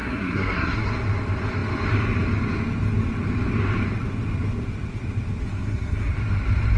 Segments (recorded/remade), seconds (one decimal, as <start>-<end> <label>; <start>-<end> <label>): 0.0-0.9 remade; 0.9-5.4 recorded; 5.4-6.1 remade; 6.1-6.8 recorded